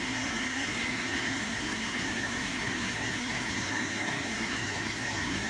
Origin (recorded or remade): remade